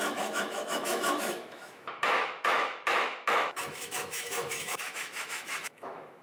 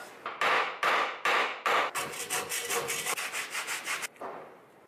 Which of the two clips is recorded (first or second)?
second